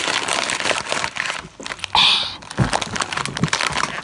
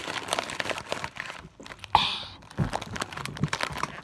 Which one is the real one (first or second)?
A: first